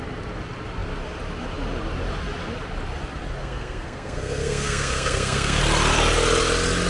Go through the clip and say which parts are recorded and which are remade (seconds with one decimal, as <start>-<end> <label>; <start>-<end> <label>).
0.0-3.4 recorded; 3.4-5.6 remade; 5.6-6.9 recorded